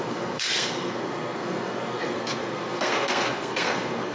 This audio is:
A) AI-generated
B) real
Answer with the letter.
A